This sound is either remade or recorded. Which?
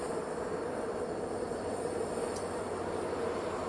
recorded